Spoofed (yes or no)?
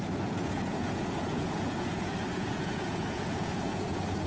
yes